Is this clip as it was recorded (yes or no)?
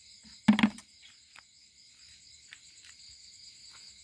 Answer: yes